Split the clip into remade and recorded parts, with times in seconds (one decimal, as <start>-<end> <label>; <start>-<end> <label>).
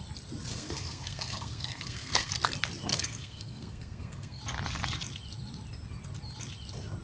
0.0-0.5 recorded; 0.5-2.3 remade; 2.3-2.9 recorded; 2.9-4.4 remade; 4.4-7.0 recorded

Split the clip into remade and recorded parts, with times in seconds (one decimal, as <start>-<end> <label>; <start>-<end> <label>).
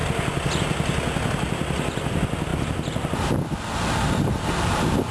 0.0-5.1 recorded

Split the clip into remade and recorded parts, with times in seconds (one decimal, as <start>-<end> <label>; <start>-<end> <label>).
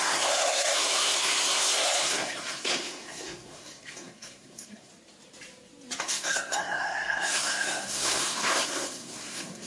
0.0-4.9 remade; 4.9-6.0 recorded; 6.0-9.7 remade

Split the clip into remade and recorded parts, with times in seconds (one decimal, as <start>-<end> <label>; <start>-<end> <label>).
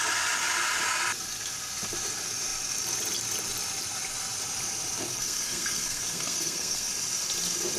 0.0-5.1 recorded; 5.1-6.9 remade; 6.9-7.8 recorded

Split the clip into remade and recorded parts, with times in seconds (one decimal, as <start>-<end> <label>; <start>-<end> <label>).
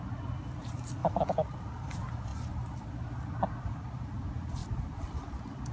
0.0-5.7 recorded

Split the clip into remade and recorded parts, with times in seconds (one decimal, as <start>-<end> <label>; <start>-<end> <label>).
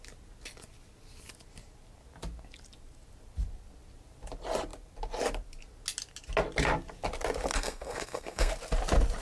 0.0-7.5 recorded; 7.5-8.5 remade; 8.5-9.2 recorded